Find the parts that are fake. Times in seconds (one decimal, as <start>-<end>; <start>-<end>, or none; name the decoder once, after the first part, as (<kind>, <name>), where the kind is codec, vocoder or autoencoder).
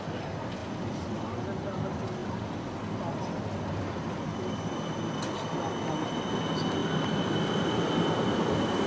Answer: none